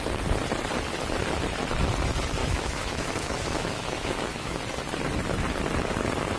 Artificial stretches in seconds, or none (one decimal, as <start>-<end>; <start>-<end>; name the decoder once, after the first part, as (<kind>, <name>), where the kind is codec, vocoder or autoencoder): 2.4-4.6 (autoencoder, DAC-VAE)